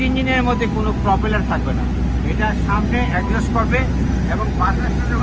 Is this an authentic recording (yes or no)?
yes